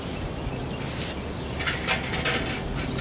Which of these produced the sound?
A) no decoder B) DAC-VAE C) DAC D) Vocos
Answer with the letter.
A